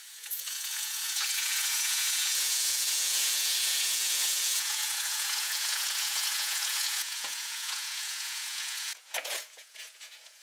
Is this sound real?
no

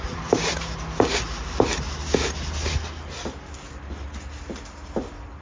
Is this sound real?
yes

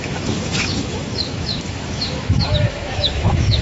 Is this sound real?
no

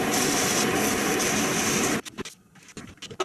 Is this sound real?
yes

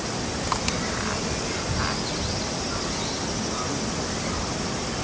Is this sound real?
yes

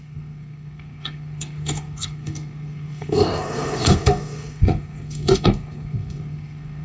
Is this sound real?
no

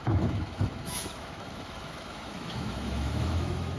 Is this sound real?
no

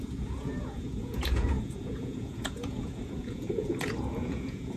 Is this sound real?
no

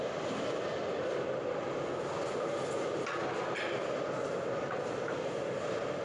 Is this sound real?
yes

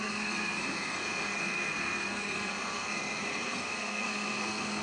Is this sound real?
no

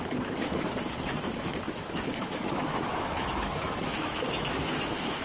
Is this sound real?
no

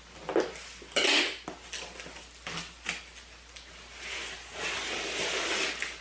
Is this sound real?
yes